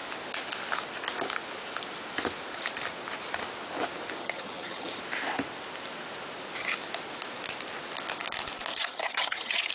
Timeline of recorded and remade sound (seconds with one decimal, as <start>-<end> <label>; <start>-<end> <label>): 0.0-4.2 recorded; 4.2-5.0 remade; 5.0-8.7 recorded; 8.7-9.7 remade